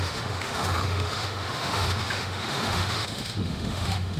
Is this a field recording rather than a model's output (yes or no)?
no